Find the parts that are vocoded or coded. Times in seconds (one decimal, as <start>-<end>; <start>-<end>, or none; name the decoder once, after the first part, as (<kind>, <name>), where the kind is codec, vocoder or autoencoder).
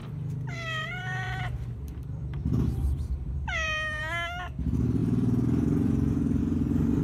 0.0-4.0 (vocoder, BigVGAN v2); 5.0-6.4